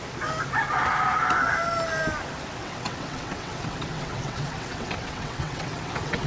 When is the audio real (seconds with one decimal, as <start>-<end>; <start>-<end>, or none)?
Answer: 0.0-2.6